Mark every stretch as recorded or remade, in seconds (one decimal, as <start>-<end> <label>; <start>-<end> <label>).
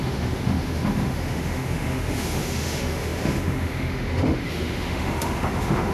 0.0-5.9 remade